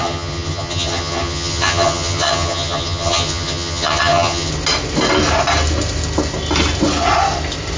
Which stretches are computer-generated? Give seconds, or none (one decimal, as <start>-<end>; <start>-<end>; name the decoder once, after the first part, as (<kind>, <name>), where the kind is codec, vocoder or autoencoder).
0.0-4.5 (vocoder, HiFi-GAN)

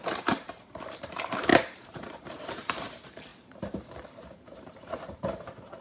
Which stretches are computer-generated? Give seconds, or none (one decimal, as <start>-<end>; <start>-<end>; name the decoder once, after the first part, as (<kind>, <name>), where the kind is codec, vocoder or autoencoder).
0.0-5.8 (vocoder, BigVGAN v2)

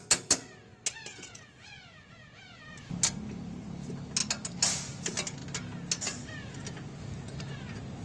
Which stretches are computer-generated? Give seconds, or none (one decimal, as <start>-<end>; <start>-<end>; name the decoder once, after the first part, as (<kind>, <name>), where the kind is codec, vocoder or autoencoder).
1.1-2.6 (vocoder, Vocos)

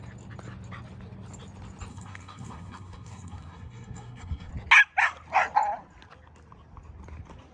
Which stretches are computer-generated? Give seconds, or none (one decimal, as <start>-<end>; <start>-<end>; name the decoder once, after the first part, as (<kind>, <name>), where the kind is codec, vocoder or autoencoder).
1.9-4.5 (codec, SNAC)

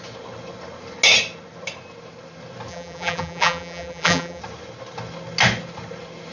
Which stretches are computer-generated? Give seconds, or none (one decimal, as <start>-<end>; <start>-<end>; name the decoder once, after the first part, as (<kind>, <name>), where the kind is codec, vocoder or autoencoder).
2.7-4.4 (vocoder, BigVGAN v2)

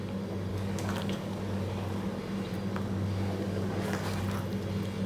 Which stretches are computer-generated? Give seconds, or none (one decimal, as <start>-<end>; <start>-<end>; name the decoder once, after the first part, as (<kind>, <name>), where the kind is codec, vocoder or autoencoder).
0.5-2.2 (codec, DAC); 2.7-4.2